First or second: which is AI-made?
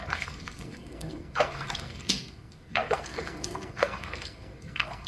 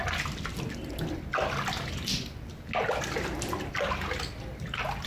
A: first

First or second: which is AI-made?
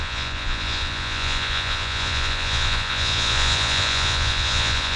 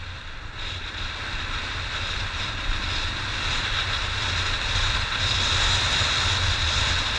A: first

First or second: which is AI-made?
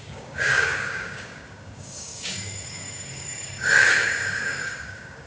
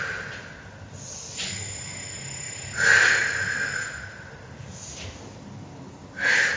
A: first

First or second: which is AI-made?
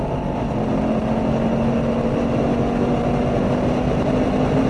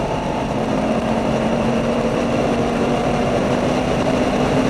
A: second